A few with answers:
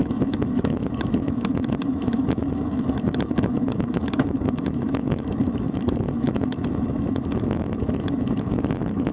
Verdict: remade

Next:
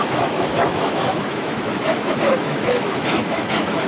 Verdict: remade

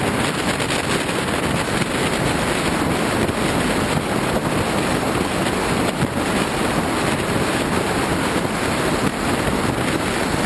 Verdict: recorded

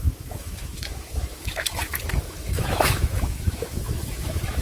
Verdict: remade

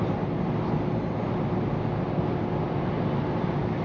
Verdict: recorded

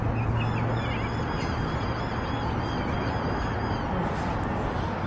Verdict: recorded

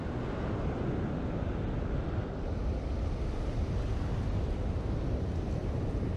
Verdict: recorded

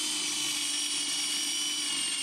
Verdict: recorded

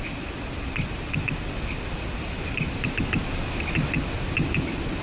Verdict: recorded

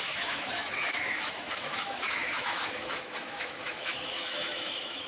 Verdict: remade